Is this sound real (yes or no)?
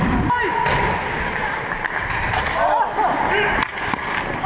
yes